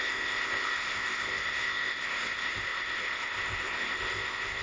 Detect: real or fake fake